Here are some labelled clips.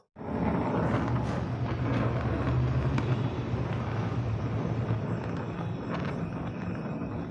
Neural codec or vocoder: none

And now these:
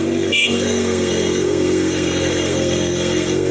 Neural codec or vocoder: codec, SNAC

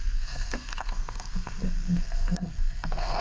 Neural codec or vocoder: codec, SNAC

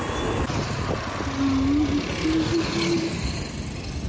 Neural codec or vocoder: none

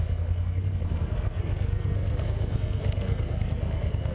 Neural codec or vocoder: codec, SNAC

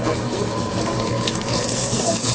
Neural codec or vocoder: codec, SNAC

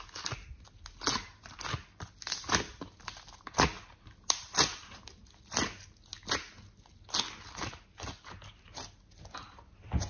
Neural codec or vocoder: none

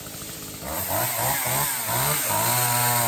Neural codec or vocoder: none